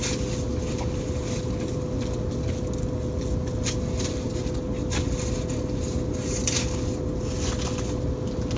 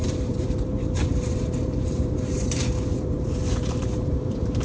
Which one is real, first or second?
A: first